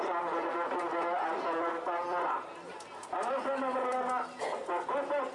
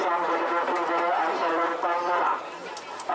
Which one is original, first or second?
first